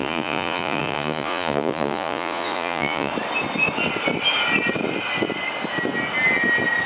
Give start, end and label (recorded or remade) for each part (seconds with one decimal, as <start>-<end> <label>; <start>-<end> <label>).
0.0-3.1 remade; 3.1-6.9 recorded